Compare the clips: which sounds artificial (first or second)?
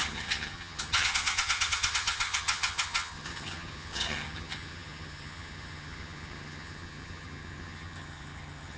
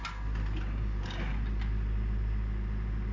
first